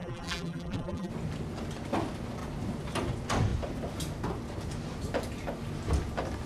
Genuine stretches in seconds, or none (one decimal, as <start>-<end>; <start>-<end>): 1.1-6.5